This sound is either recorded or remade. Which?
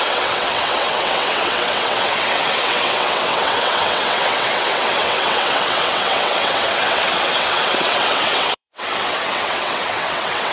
remade